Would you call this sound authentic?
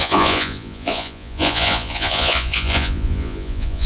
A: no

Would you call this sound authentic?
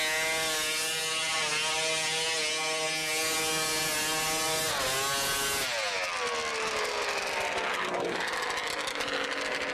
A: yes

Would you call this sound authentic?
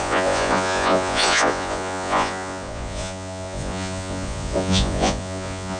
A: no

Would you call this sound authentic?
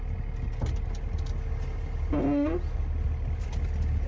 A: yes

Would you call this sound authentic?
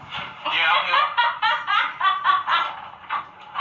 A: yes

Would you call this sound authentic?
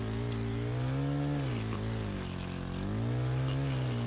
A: yes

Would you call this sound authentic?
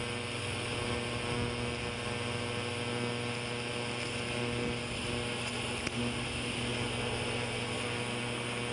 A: yes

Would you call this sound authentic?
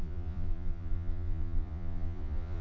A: no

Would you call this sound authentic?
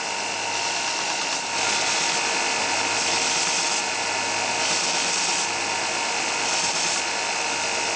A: yes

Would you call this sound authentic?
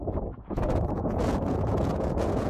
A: no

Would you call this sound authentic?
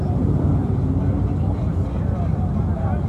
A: yes